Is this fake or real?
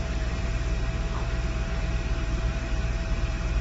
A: fake